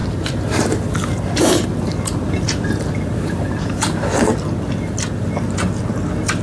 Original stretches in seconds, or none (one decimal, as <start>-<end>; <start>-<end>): 0.7-2.1; 3.7-6.4